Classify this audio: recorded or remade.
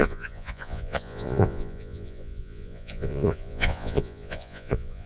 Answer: remade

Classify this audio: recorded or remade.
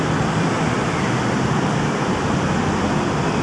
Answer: recorded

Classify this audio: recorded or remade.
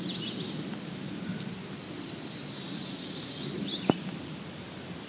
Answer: recorded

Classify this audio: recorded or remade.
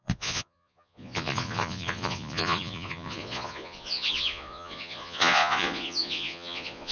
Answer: remade